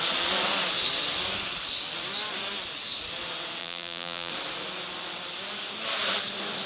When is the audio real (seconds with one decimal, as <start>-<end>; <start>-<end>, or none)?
0.0-3.6; 4.3-6.7